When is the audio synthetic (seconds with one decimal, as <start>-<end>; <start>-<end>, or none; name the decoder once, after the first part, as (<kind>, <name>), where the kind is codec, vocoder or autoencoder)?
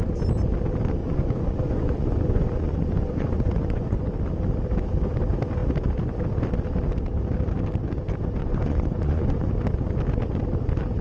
1.0-4.0 (vocoder, Vocos); 8.4-9.5